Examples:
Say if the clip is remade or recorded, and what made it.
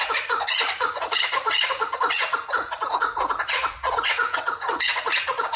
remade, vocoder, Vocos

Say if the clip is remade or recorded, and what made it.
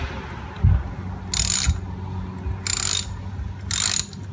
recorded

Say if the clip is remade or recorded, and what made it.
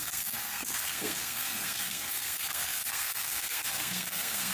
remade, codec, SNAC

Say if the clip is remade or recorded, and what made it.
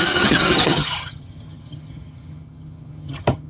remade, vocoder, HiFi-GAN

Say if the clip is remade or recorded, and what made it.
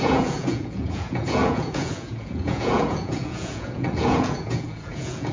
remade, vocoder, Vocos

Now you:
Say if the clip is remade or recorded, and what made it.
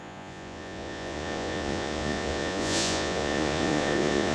remade, vocoder, Vocos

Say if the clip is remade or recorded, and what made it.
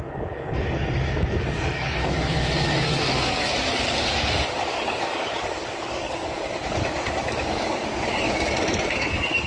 remade, codec, DAC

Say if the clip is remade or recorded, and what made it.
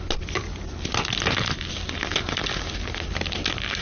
recorded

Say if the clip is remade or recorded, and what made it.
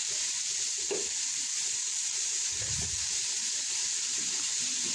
remade, vocoder, BigVGAN v2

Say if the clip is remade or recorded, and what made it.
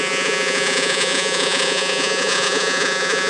remade, vocoder, Vocos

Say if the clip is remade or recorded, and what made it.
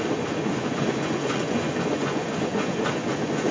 remade, vocoder, Vocos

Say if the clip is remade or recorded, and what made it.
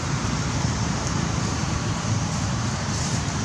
remade, vocoder, BigVGAN v2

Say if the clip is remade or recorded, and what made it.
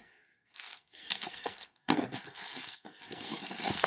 remade, codec, SNAC